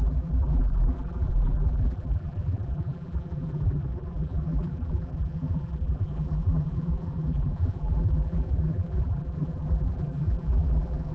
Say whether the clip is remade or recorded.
remade